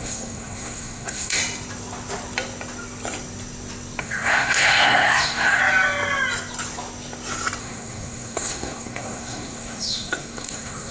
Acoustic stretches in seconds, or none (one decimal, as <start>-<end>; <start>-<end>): 1.4-4.0; 5.6-7.6